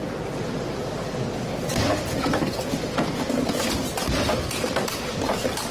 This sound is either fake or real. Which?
real